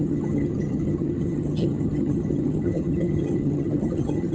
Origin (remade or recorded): remade